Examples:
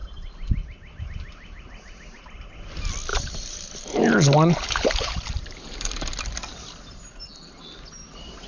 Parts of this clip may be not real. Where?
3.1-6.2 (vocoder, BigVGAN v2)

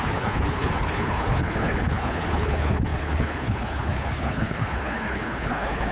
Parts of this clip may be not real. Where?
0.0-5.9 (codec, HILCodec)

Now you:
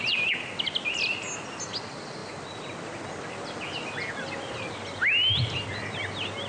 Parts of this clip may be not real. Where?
none